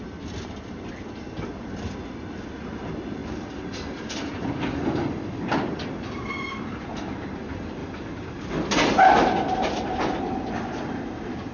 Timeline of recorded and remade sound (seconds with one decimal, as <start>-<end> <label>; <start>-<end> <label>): 0.0-3.2 recorded; 3.2-6.3 remade; 6.3-7.8 recorded; 7.8-8.5 remade; 8.5-11.5 recorded